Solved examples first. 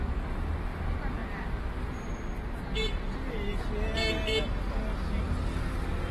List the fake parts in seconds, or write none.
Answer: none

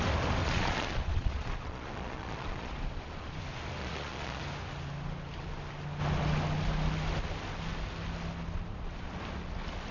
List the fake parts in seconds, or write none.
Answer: 0.4-2.7 (vocoder, Vocos); 3.8-4.4

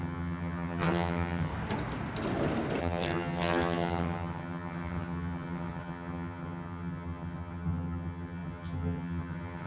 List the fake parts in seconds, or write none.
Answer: 0.0-1.5 (vocoder, HiFi-GAN); 2.8-9.7

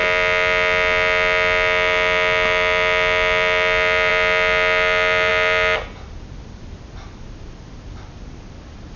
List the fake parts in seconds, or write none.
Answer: none

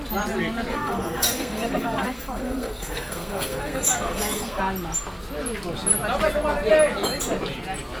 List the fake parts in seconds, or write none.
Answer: 0.7-4.6 (codec, SNAC)

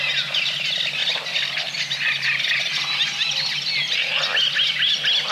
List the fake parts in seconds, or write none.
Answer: none